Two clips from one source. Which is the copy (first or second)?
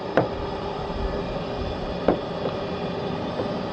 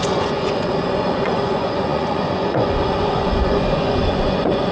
second